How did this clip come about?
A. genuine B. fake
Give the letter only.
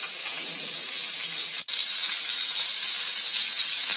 A